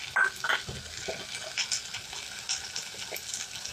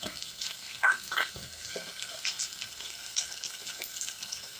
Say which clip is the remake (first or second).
second